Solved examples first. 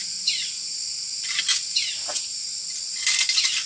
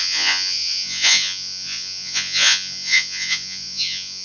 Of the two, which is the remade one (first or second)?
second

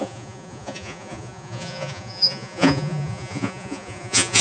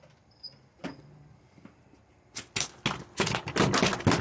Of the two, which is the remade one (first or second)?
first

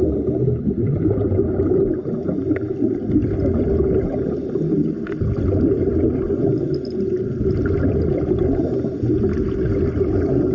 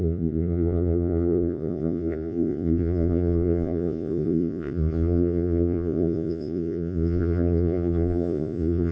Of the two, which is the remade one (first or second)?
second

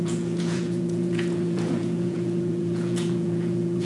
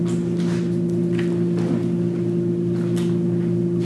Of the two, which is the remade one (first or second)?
first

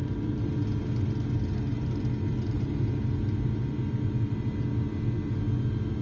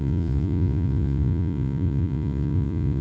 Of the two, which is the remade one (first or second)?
second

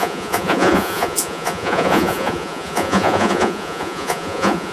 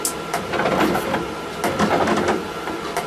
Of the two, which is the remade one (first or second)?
first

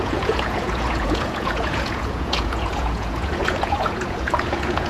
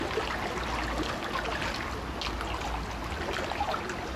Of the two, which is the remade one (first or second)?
first